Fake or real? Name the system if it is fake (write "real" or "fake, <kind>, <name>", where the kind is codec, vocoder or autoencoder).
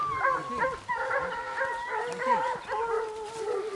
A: real